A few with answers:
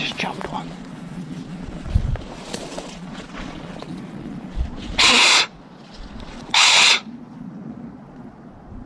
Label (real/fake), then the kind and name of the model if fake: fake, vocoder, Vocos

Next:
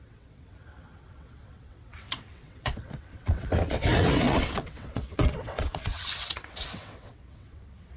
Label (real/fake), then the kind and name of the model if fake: fake, vocoder, WaveNeXt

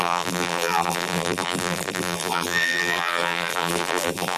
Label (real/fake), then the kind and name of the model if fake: fake, vocoder, BigVGAN v2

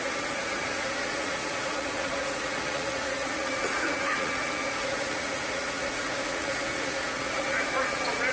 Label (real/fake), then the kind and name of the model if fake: fake, vocoder, Vocos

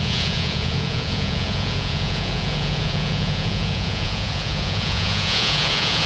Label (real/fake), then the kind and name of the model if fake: fake, vocoder, Vocos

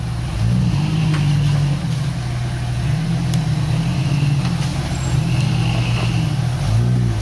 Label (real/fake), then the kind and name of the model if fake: real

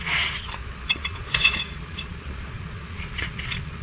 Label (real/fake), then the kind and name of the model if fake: fake, vocoder, Vocos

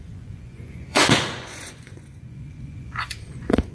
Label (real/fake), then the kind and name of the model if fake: fake, vocoder, Vocos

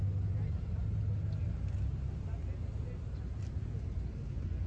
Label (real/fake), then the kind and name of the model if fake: real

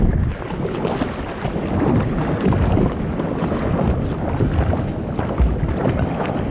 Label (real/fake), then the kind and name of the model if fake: real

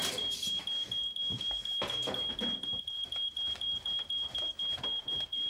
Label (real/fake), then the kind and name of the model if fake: fake, vocoder, BigVGAN v2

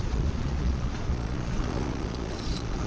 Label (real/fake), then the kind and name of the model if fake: fake, vocoder, Vocos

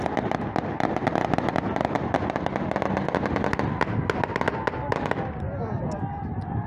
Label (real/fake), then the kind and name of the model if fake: real